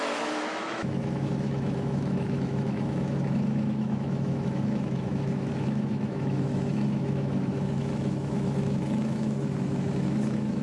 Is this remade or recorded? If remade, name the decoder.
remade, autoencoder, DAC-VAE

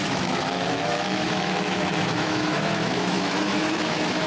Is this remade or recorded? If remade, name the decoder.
remade, autoencoder, DAC-VAE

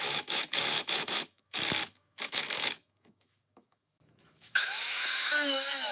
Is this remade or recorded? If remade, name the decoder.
remade, autoencoder, DAC-VAE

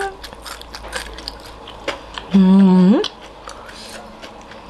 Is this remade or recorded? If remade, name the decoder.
recorded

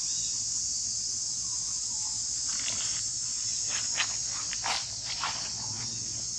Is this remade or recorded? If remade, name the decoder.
recorded